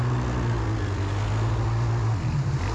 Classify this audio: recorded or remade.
recorded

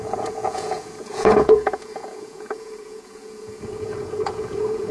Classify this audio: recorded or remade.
remade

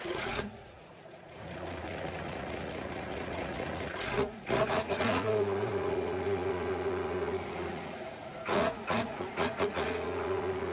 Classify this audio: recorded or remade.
remade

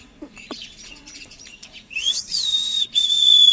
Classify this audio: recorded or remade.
remade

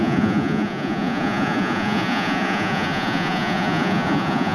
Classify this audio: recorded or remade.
remade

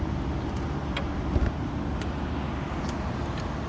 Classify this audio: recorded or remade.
recorded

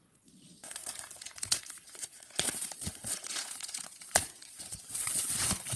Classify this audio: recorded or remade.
remade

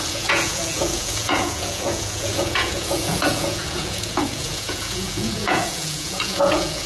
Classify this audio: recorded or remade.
remade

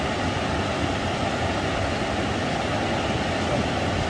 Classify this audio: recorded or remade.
recorded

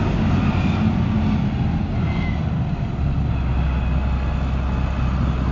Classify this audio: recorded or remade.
recorded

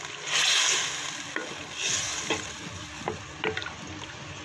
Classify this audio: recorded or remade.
recorded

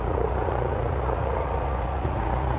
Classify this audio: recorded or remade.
remade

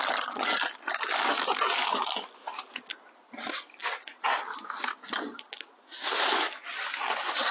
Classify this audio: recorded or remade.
recorded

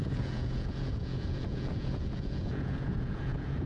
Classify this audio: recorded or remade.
remade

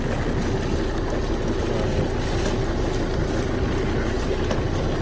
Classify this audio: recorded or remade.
recorded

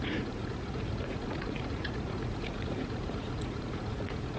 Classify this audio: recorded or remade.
remade